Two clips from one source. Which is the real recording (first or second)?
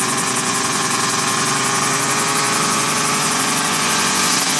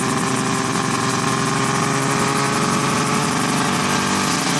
second